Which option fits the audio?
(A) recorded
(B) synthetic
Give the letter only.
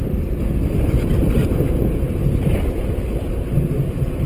A